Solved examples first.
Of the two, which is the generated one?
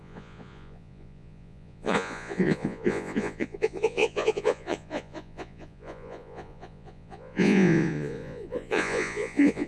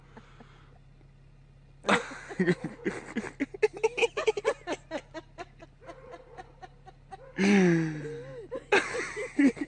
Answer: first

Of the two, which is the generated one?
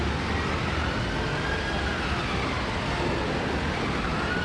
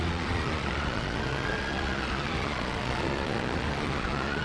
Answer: second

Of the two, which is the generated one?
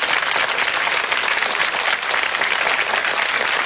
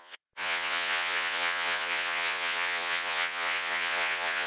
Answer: second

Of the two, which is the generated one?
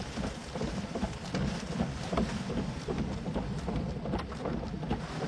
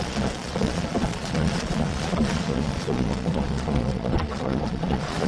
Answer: second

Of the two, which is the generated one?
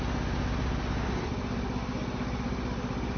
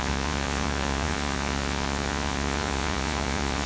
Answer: second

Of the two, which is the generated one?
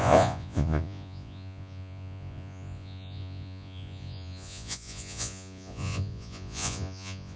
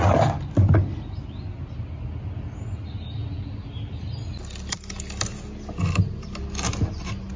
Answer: first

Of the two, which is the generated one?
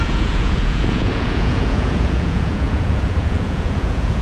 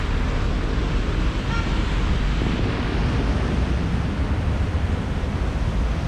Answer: first